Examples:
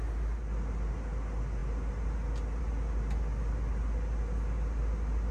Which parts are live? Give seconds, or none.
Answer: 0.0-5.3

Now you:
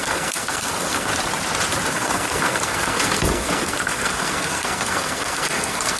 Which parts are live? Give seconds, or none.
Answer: 1.1-1.9

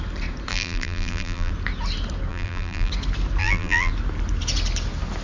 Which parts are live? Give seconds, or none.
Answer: 0.0-0.5; 1.5-2.3; 2.9-3.4; 3.9-5.2

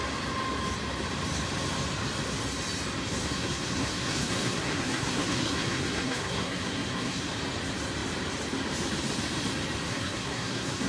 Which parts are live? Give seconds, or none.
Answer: 0.0-3.1; 7.3-9.9

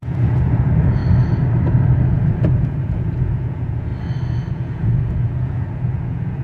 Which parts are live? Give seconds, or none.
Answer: 1.0-2.0; 3.9-4.5

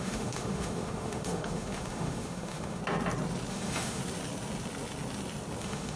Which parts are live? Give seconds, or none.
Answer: 2.8-3.5; 4.0-5.6

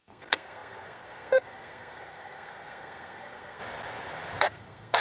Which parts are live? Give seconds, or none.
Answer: 3.6-4.4